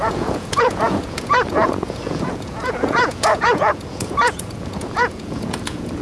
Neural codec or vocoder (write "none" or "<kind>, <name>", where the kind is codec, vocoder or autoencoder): vocoder, Vocos